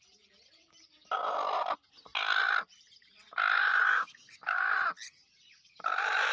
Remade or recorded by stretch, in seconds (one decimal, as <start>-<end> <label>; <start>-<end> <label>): 0.0-3.9 recorded; 3.9-4.6 remade; 4.6-6.3 recorded